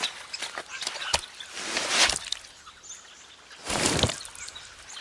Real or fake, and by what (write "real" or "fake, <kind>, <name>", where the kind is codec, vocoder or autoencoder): real